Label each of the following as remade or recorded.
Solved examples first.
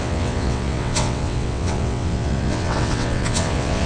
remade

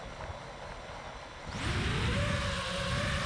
recorded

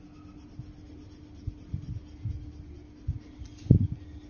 recorded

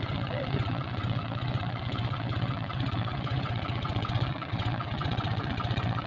remade